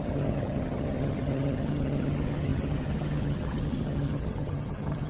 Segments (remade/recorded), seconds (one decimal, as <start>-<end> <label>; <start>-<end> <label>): 0.0-5.1 remade